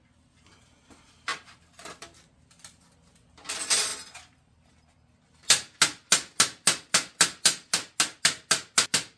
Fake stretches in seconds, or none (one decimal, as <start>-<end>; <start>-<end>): 0.0-1.3; 2.0-3.9